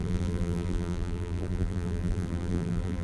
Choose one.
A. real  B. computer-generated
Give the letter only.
B